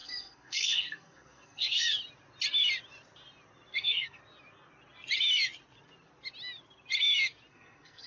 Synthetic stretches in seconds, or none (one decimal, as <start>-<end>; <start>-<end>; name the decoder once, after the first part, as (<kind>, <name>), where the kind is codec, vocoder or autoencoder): 0.0-2.0 (codec, SNAC); 3.8-4.2; 7.5-8.1